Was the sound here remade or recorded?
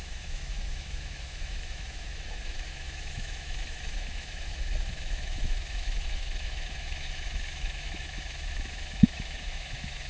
remade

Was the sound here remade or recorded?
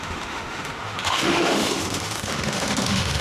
remade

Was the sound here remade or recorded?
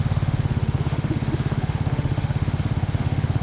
remade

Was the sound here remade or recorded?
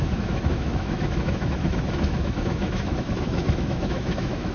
remade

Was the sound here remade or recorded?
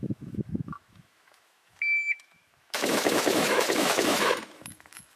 remade